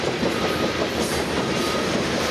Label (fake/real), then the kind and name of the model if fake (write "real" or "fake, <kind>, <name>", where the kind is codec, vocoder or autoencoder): real